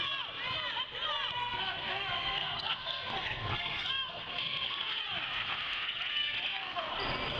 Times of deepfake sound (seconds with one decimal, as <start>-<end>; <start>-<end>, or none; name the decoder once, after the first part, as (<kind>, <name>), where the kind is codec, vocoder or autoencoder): 1.4-5.0 (codec, SNAC); 5.4-6.9